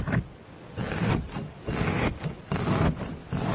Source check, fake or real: real